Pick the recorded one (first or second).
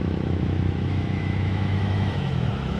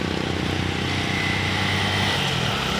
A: second